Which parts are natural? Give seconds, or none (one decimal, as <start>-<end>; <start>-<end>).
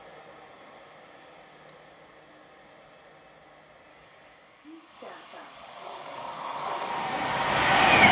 0.0-3.9; 6.9-8.1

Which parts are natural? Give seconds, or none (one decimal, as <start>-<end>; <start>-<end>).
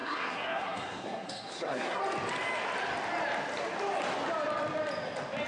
2.0-5.5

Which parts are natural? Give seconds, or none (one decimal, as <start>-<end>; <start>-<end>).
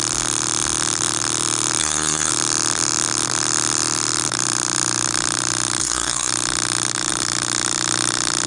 0.0-1.8; 2.3-5.8; 6.3-8.5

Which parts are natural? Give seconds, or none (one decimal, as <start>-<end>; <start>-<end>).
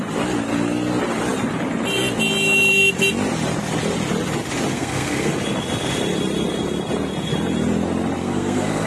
0.0-4.7; 5.3-8.2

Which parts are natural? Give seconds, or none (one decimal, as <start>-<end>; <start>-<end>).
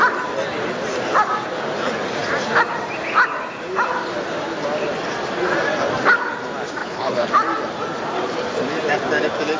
0.0-6.8; 7.3-9.6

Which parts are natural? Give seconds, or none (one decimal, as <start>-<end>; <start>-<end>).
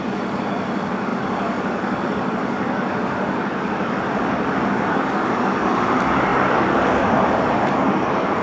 none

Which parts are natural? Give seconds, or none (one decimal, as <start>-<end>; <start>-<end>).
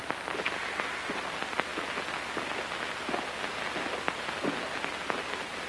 0.0-5.7